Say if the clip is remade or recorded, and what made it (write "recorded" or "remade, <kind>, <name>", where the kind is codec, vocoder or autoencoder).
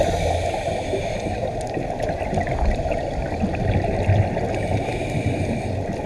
recorded